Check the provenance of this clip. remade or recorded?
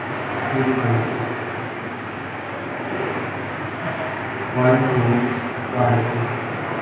remade